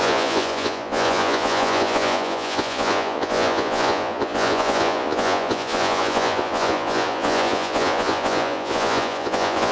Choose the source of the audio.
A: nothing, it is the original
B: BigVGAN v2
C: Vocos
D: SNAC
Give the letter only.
C